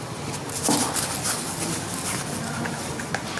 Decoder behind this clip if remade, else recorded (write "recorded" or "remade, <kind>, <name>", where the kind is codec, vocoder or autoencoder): recorded